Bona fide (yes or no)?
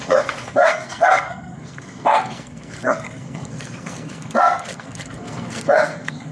no